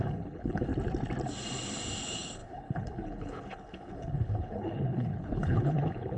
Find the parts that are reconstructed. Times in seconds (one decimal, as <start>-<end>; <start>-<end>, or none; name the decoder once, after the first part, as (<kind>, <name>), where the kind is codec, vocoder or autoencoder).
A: 0.0-0.7 (codec, HILCodec); 2.0-6.2